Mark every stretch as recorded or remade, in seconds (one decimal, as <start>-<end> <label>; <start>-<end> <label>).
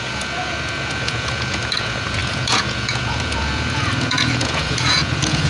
0.0-5.5 remade